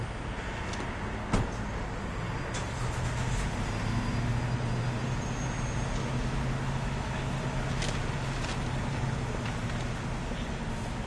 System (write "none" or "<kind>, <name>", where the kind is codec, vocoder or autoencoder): none